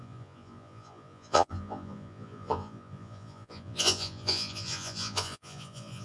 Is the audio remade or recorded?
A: remade